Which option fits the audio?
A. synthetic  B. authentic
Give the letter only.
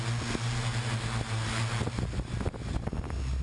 B